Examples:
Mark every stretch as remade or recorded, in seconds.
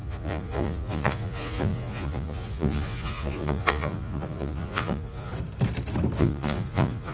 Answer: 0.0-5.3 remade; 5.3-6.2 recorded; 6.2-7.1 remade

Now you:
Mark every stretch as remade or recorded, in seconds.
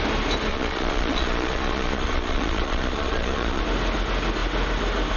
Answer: 0.0-0.5 recorded; 0.5-3.6 remade; 3.6-5.2 recorded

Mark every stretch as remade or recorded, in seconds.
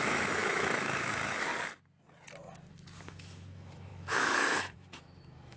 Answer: 0.0-1.5 remade; 1.5-2.7 recorded; 2.7-5.6 remade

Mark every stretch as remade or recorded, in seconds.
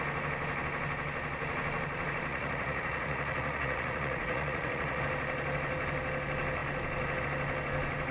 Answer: 0.0-2.3 recorded; 2.3-5.0 remade; 5.0-8.1 recorded